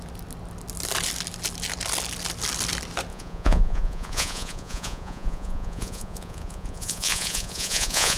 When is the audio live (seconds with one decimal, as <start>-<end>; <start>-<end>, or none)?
0.0-3.1